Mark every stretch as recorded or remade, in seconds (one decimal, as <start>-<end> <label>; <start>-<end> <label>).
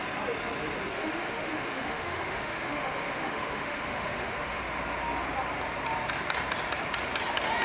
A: 0.0-0.9 recorded; 0.9-4.6 remade; 4.6-7.6 recorded